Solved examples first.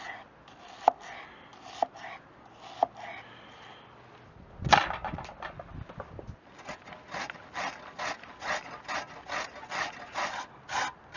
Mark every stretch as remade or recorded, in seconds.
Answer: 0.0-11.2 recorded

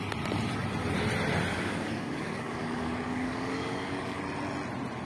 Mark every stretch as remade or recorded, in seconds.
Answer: 0.0-1.5 recorded; 1.5-4.2 remade; 4.2-5.0 recorded

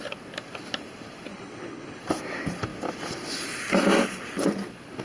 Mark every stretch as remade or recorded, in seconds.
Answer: 0.0-1.3 recorded; 1.3-2.0 remade; 2.0-5.0 recorded

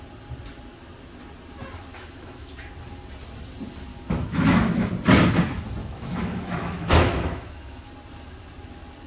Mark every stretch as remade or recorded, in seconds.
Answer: 0.0-1.9 recorded; 1.9-2.5 remade; 2.5-3.9 recorded; 3.9-4.9 remade; 4.9-5.8 recorded; 5.8-7.9 remade; 7.9-9.1 recorded

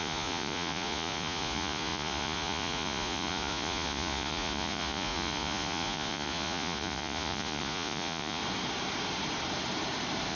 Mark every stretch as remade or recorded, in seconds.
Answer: 0.0-8.4 remade; 8.4-10.3 recorded

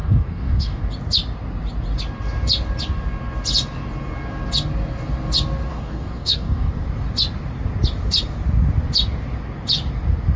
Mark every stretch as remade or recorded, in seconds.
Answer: 0.0-0.8 remade; 0.8-5.7 recorded; 5.7-6.7 remade; 6.7-10.4 recorded

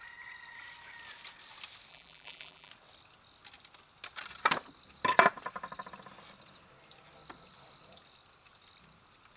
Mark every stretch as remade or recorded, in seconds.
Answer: 0.0-1.9 recorded; 1.9-2.7 remade; 2.7-9.4 recorded

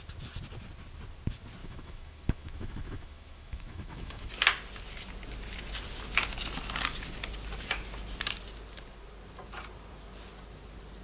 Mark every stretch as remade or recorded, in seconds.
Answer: 0.0-1.6 recorded; 1.6-4.3 remade; 4.3-11.0 recorded